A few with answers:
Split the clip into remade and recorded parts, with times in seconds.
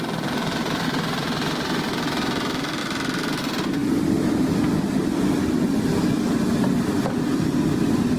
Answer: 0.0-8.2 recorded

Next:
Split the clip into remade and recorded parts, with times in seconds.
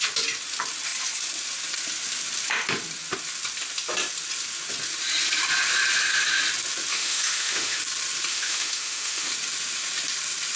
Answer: 0.0-6.9 recorded; 6.9-7.8 remade; 7.8-8.3 recorded; 8.3-9.3 remade; 9.3-10.6 recorded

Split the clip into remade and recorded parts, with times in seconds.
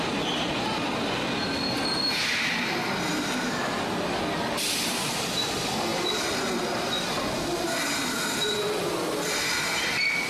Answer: 0.0-5.9 recorded; 5.9-6.4 remade; 6.4-10.3 recorded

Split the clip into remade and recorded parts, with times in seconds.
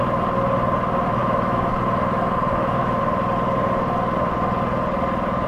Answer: 0.0-1.2 recorded; 1.2-1.7 remade; 1.7-2.5 recorded; 2.5-3.0 remade; 3.0-5.5 recorded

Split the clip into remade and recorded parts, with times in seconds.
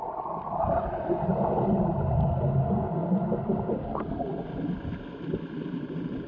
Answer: 0.0-6.3 recorded